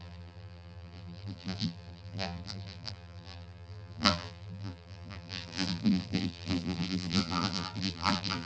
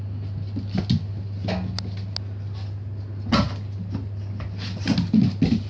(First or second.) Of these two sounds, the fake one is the first